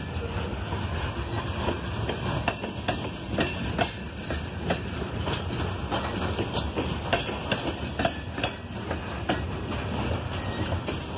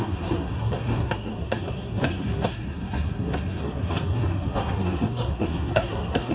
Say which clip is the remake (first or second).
second